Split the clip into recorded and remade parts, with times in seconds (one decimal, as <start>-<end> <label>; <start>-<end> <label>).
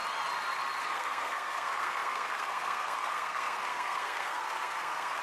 0.0-0.8 recorded; 0.8-5.2 remade